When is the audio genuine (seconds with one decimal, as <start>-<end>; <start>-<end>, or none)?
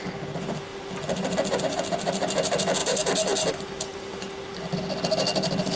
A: 0.0-5.8